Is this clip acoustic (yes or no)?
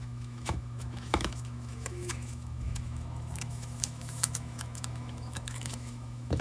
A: no